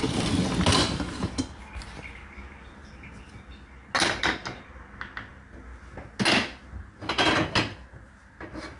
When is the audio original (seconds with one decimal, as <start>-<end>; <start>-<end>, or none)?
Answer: 0.0-8.8